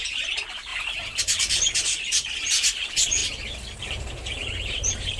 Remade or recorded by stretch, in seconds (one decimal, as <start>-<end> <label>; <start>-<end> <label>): 0.0-0.7 remade; 0.7-1.2 recorded; 1.2-3.2 remade; 3.2-3.8 recorded; 3.8-5.2 remade